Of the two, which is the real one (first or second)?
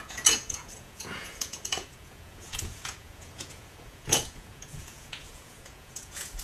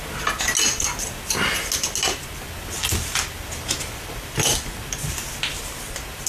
second